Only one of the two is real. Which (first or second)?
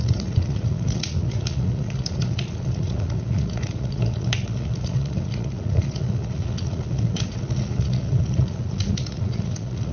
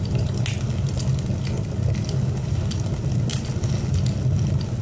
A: second